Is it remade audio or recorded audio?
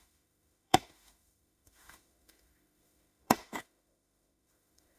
remade